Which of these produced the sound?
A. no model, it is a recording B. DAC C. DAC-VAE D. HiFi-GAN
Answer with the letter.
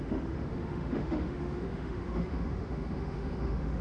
C